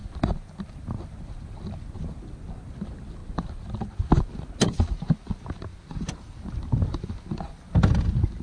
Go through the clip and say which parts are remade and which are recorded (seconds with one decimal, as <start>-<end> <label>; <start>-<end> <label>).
0.0-8.4 recorded